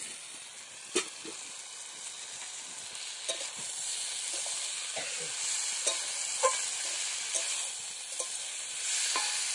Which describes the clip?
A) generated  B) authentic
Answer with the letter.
B